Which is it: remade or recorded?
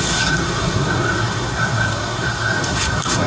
remade